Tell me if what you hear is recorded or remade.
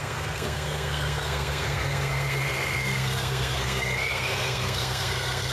remade